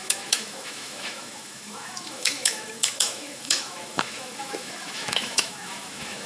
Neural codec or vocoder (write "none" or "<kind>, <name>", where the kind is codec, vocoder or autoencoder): autoencoder, DAC-VAE